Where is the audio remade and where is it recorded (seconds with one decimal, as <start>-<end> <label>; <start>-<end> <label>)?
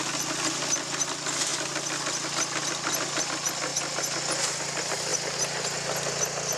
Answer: 0.0-6.6 recorded